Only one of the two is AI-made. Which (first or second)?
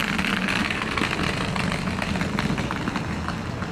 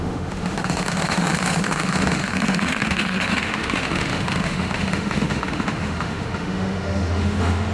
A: second